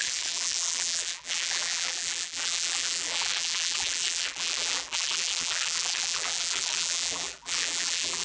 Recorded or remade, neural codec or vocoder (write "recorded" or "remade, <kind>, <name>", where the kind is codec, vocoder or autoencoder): remade, vocoder, BigVGAN v2